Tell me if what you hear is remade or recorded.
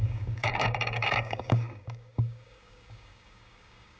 remade